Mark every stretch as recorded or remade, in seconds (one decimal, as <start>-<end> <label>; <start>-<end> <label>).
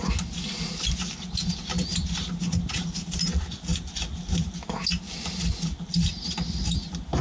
0.0-7.2 recorded